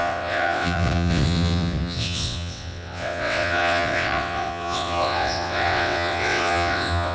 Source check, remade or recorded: remade